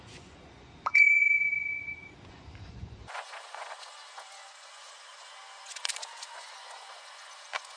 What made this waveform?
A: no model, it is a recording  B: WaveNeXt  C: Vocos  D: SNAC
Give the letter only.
C